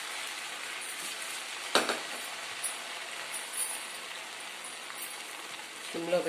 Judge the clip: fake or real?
real